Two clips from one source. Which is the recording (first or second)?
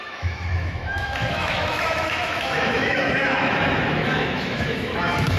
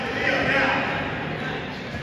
second